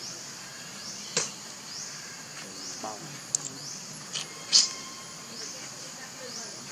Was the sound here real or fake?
real